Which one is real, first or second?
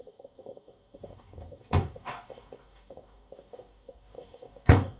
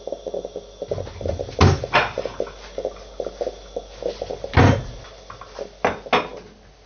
second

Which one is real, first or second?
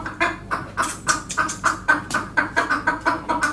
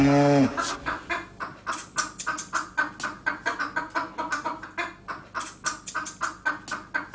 second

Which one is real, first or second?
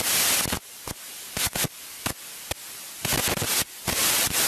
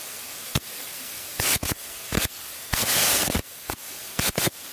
first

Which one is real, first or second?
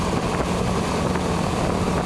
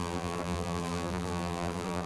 first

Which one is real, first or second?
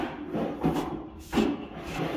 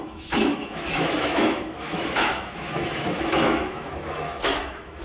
first